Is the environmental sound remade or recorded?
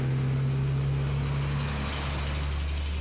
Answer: recorded